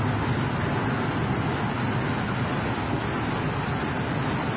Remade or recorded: recorded